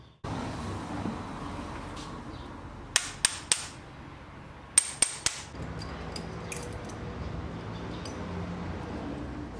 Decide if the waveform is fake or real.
real